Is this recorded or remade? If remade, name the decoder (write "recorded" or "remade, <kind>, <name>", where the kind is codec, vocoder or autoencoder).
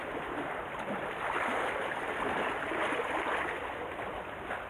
recorded